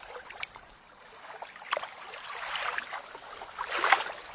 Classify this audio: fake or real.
real